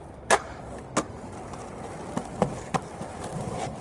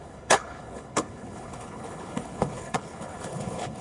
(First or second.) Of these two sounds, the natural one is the first